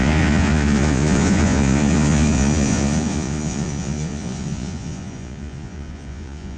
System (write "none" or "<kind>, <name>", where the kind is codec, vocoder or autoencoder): vocoder, Vocos